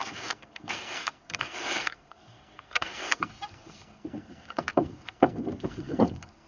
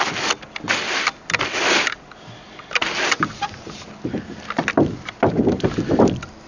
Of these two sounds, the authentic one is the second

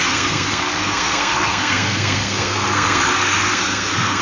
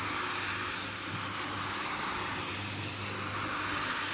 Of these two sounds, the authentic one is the second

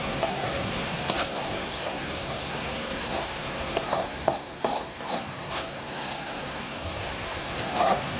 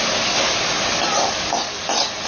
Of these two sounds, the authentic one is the second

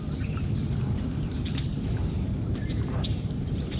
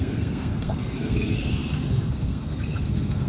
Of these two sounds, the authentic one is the first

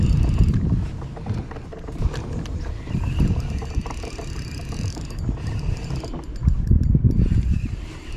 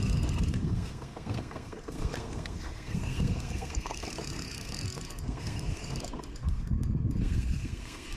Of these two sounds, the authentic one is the first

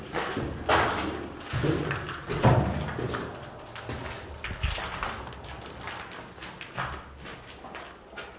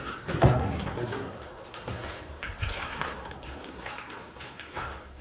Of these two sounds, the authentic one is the first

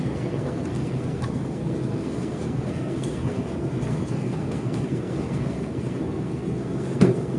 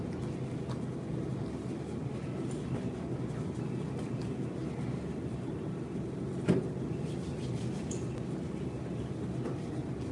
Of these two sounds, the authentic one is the second